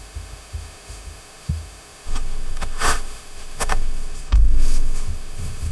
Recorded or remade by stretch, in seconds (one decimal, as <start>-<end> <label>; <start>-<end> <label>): 0.0-5.7 remade